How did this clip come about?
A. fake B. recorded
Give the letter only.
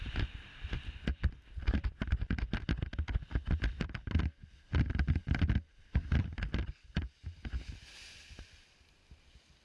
B